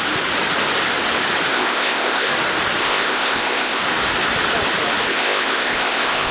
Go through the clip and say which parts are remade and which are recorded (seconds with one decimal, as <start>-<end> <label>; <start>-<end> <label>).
0.0-1.5 recorded; 1.5-2.3 remade; 2.3-2.8 recorded; 2.8-3.8 remade; 3.8-5.1 recorded; 5.1-6.3 remade